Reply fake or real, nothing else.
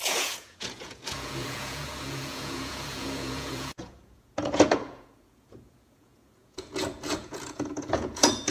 fake